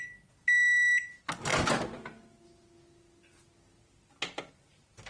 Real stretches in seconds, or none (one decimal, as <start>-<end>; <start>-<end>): 0.0-5.1